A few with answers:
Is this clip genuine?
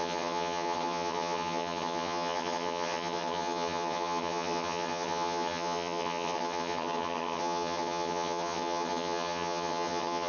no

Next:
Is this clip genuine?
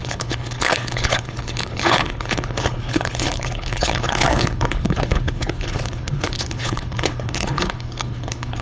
no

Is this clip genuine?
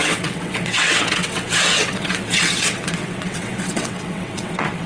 no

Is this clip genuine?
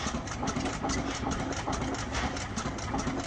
yes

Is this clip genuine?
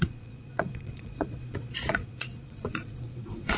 no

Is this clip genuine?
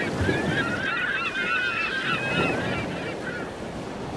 yes